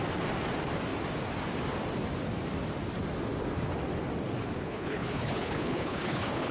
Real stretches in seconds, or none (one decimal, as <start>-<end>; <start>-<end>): 0.0-4.6

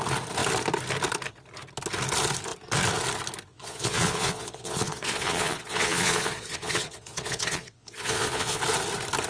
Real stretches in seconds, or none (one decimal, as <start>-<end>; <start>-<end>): 0.0-3.5; 8.6-9.3

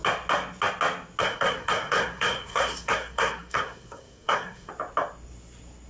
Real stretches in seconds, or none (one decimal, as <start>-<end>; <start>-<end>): 0.0-1.2; 4.7-5.9

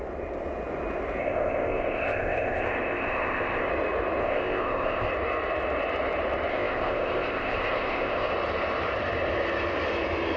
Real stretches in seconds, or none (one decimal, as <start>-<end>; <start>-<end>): 0.0-1.2; 3.7-4.2; 5.1-6.5; 8.3-10.4

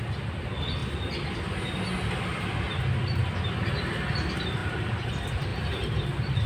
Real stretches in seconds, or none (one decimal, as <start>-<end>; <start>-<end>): 0.0-4.6; 5.1-5.5

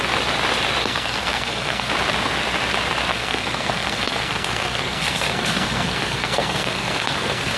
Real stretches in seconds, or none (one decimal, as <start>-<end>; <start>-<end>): 0.0-0.8; 1.9-3.1

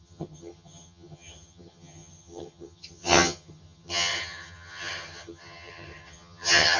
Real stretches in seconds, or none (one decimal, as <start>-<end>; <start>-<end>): none